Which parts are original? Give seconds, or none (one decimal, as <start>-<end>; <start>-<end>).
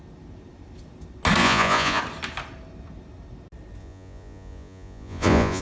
0.0-1.4; 2.0-3.8